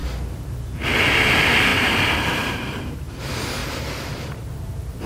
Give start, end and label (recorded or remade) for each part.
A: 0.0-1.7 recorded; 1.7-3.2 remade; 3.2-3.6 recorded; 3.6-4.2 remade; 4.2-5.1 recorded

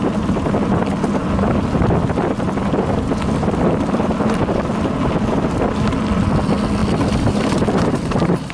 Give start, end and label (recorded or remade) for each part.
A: 0.0-8.5 recorded

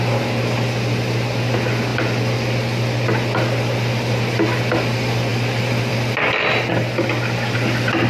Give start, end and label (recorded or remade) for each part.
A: 0.0-8.1 recorded

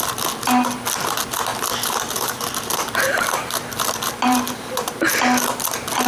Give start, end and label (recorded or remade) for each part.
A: 0.0-1.5 recorded; 1.5-5.2 remade; 5.2-6.1 recorded

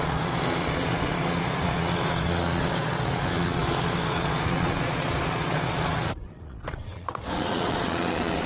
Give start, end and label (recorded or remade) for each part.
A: 0.0-8.5 remade

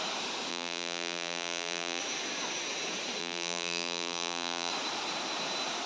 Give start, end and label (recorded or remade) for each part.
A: 0.0-0.5 recorded; 0.5-2.0 remade; 2.0-3.2 recorded; 3.2-4.7 remade; 4.7-5.9 recorded